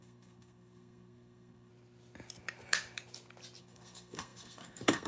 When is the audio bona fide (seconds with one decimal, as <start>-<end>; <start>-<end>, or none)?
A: 1.7-3.6